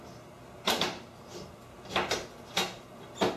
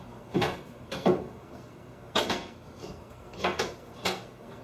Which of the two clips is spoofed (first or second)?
second